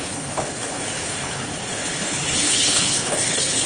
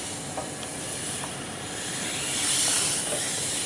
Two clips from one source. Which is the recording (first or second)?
second